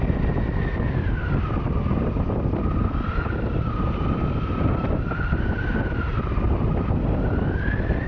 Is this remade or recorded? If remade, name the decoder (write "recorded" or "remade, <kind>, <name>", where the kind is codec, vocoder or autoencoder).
recorded